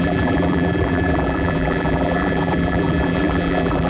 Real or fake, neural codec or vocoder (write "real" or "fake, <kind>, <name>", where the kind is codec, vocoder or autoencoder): fake, vocoder, BigVGAN v2